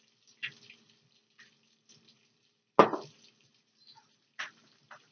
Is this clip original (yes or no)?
yes